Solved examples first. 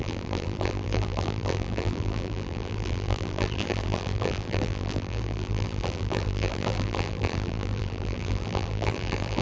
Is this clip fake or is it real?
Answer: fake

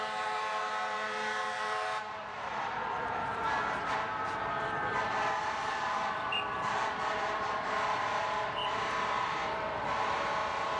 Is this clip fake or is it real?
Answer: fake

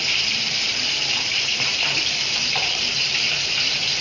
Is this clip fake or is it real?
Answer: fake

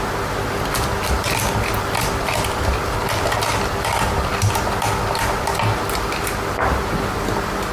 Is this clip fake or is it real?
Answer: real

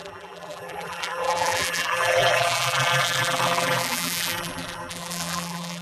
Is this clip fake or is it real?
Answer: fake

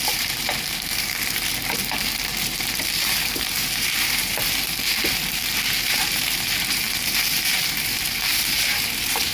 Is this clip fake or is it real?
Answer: fake